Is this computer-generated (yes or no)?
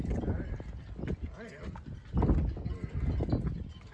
no